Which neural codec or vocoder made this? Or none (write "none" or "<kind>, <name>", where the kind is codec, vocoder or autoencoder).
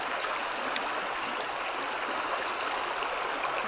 none